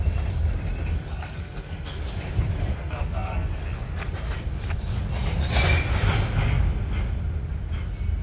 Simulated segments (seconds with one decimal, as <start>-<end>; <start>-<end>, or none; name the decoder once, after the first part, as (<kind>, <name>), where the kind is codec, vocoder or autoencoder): 1.1-2.0 (codec, SNAC); 2.7-3.6